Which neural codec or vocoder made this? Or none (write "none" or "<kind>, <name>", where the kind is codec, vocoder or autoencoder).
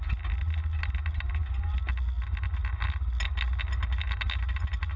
none